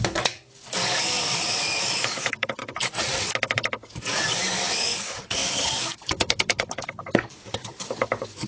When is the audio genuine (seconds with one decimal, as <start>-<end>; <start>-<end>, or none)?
2.6-3.8